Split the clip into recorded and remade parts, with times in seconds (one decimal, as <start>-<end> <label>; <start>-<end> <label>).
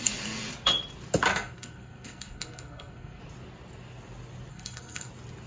0.0-1.3 recorded; 1.3-3.2 remade; 3.2-4.5 recorded; 4.5-5.1 remade; 5.1-5.5 recorded